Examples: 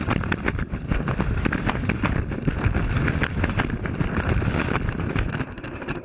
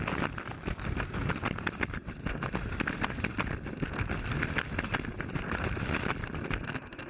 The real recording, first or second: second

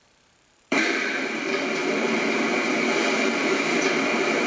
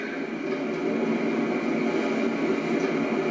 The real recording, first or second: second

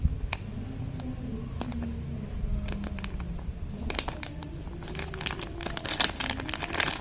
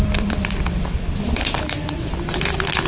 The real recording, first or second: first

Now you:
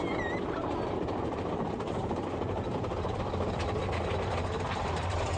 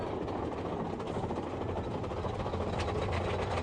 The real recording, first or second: second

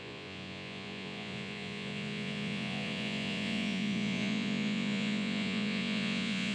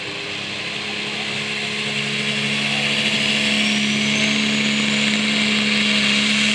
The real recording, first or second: second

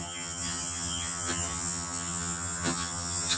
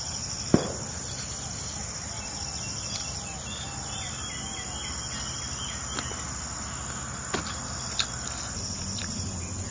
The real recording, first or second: second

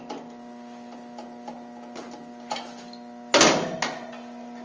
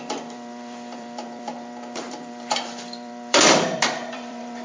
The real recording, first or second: first